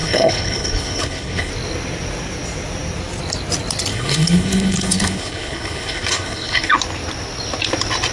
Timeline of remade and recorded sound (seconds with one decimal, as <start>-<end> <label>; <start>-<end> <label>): 0.0-1.5 remade; 1.5-3.9 recorded; 3.9-6.7 remade; 6.7-8.1 recorded